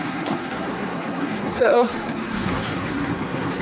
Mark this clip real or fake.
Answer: fake